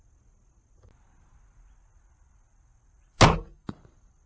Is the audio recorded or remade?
recorded